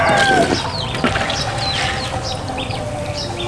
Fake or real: real